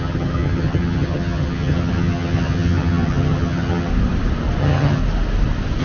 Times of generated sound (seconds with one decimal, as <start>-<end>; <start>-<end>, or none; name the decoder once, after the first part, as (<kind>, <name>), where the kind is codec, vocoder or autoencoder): 0.0-3.9 (vocoder, HiFi-GAN); 4.6-5.0